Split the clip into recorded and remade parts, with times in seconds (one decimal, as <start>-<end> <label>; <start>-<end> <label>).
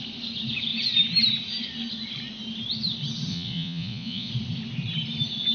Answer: 0.0-3.3 recorded; 3.3-4.3 remade; 4.3-5.5 recorded